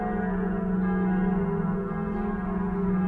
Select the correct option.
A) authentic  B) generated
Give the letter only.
A